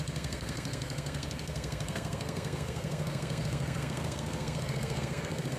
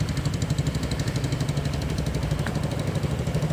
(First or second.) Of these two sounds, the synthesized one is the first